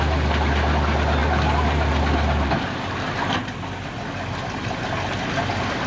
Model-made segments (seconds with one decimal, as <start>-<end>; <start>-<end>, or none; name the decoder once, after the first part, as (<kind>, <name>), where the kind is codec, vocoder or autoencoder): none